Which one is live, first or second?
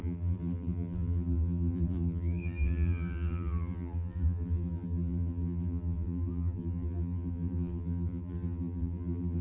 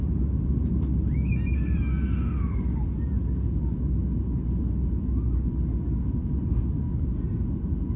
second